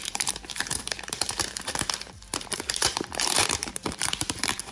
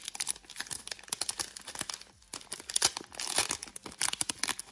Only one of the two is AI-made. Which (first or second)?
first